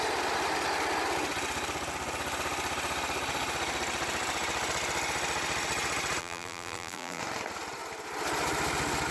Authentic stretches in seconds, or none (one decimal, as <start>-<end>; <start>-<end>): 0.0-6.2; 7.2-9.1